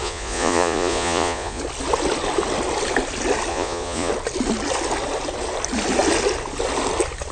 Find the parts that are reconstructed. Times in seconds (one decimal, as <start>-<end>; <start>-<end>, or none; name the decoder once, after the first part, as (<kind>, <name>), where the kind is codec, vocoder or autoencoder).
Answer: 0.0-1.6 (vocoder, Vocos); 3.5-4.1